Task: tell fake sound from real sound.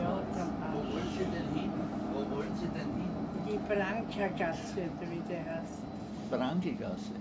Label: real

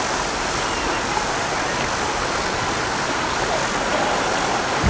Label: real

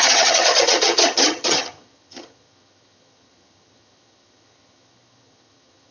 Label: fake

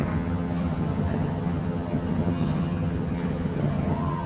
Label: fake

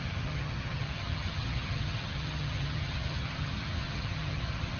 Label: fake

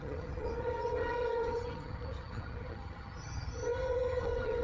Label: fake